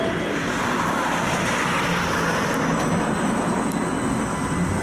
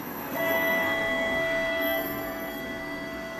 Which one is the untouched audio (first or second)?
first